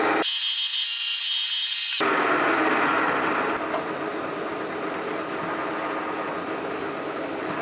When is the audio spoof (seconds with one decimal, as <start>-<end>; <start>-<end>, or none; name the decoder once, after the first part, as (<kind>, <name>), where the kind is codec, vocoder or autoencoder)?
none

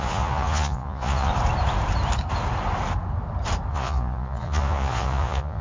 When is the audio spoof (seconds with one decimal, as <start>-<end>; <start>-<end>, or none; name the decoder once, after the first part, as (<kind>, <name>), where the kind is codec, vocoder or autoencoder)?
0.0-1.3 (vocoder, Vocos); 3.7-5.6

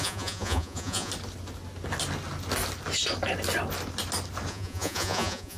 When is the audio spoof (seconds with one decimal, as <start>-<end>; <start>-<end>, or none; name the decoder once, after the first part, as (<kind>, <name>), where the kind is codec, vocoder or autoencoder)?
0.0-1.1 (vocoder, Vocos); 4.5-5.6

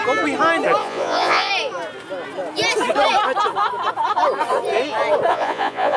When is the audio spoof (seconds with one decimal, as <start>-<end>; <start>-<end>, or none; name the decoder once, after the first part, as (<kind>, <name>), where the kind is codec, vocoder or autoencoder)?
0.8-1.5 (vocoder, Vocos); 5.3-6.0

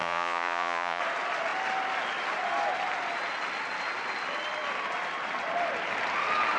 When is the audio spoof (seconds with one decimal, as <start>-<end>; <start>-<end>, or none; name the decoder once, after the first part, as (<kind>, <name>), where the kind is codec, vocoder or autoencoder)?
0.0-1.0 (vocoder, Vocos)